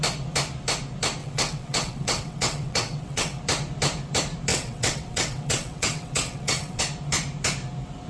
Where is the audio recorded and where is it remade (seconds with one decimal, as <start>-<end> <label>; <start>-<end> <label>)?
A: 0.0-1.2 recorded; 1.2-3.4 remade; 3.4-4.5 recorded; 4.5-6.8 remade; 6.8-8.1 recorded